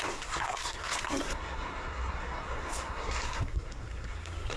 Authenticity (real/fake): fake